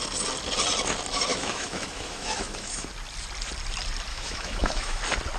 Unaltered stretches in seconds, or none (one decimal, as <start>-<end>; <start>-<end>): 0.0-1.3; 2.9-4.1; 5.0-5.4